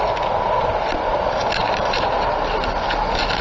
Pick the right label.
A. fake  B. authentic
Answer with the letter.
B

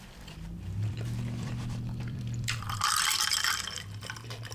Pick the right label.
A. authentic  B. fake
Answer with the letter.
B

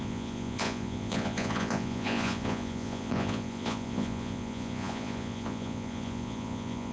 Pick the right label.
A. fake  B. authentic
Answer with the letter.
A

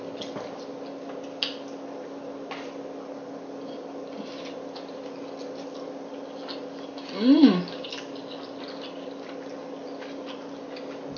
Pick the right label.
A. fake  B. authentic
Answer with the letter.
B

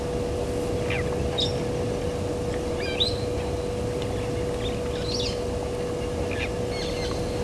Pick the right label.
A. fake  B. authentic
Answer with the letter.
B